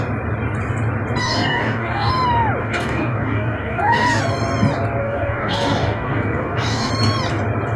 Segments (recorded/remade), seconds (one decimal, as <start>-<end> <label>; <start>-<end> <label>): 0.0-1.2 recorded; 1.2-2.1 remade; 2.1-2.6 recorded; 2.6-4.2 remade; 4.2-5.0 recorded; 5.0-6.9 remade; 6.9-7.8 recorded